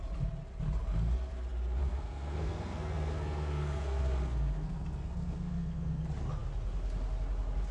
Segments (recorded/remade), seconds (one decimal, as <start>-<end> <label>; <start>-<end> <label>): 0.0-1.8 recorded; 1.8-6.0 remade; 6.0-7.7 recorded